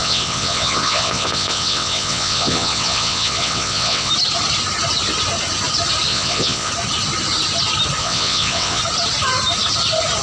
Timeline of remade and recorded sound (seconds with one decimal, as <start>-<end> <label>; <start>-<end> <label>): 0.0-4.1 remade; 4.1-6.1 recorded; 6.1-6.7 remade; 6.7-8.0 recorded; 8.0-8.8 remade; 8.8-10.2 recorded